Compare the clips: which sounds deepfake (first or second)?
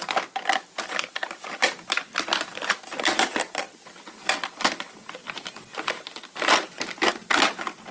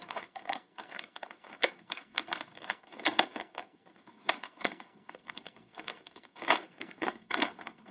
second